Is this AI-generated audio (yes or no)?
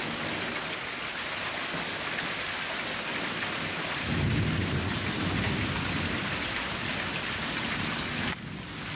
no